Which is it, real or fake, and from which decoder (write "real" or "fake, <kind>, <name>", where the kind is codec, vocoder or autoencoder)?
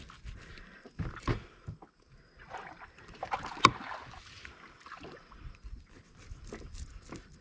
real